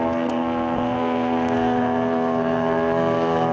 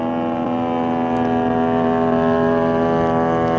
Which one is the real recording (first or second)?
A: second